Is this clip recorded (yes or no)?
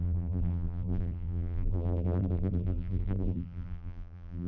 no